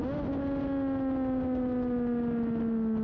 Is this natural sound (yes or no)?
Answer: yes